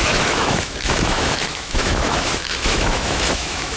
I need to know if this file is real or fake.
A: fake